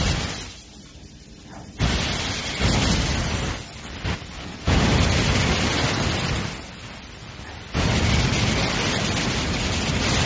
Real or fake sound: real